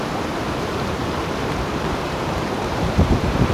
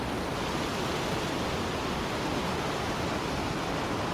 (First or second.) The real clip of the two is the second